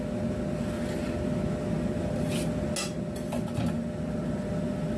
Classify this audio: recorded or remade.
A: recorded